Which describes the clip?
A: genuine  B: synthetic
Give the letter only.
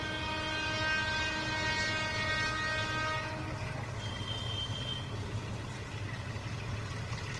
A